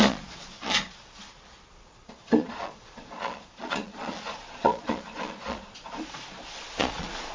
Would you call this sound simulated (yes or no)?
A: yes